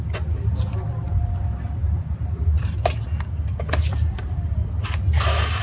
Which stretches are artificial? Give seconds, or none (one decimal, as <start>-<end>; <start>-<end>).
1.8-2.7